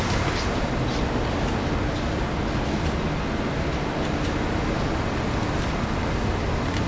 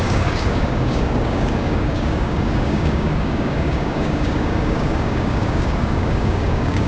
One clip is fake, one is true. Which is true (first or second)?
first